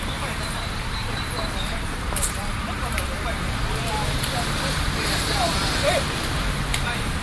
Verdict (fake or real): fake